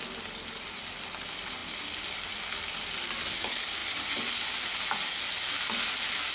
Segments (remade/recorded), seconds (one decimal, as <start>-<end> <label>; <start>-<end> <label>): 0.0-6.3 recorded